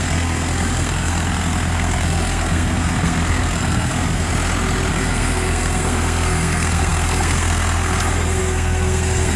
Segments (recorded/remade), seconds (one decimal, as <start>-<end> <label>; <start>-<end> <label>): 0.0-4.3 remade; 4.3-4.9 recorded; 4.9-9.4 remade